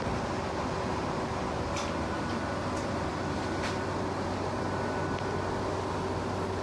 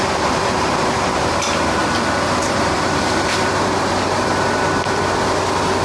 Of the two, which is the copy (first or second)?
second